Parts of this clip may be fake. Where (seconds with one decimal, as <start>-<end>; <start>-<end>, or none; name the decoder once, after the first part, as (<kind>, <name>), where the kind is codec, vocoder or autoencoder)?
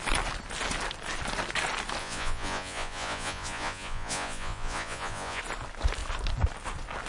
2.0-5.4 (vocoder, Vocos)